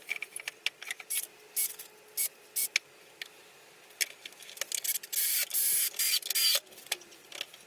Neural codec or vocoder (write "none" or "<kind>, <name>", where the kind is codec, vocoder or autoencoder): none